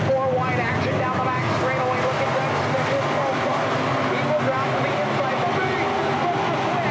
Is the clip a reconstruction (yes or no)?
no